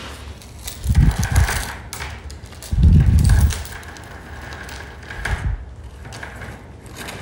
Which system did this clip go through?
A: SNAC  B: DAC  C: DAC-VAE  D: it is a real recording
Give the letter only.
D